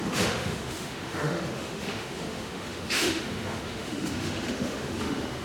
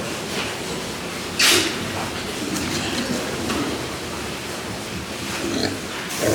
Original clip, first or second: second